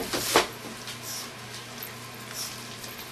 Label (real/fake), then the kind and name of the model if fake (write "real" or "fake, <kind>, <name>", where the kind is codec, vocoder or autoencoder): real